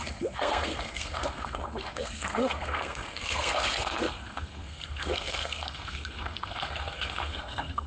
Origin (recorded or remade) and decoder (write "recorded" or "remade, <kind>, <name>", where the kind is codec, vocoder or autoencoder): remade, codec, SNAC